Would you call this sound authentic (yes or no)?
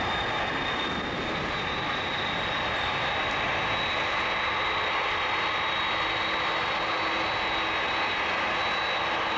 yes